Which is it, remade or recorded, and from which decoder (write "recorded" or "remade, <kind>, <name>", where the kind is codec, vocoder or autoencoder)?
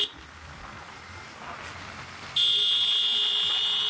recorded